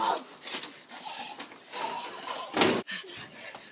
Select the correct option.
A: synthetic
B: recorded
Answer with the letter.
B